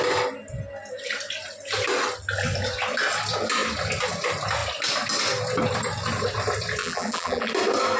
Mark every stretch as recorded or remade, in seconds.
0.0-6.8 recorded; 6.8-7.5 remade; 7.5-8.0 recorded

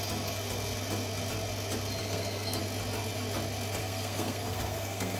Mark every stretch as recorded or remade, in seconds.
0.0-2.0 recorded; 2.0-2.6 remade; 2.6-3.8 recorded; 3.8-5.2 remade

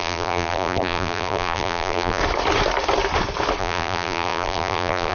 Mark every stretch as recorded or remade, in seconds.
0.0-2.2 remade; 2.2-3.6 recorded; 3.6-5.1 remade

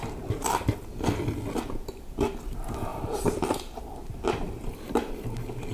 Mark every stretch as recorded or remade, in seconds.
0.0-5.7 recorded